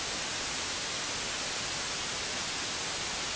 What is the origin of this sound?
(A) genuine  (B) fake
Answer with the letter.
A